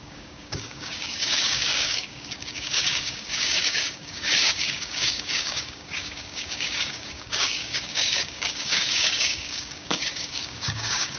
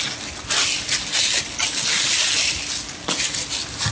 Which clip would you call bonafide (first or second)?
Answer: second